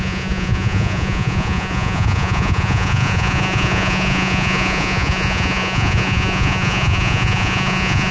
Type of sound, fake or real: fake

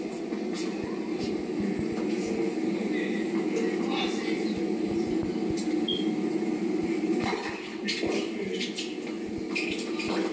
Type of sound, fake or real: real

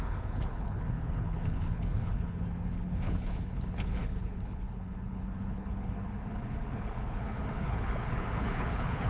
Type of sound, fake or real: fake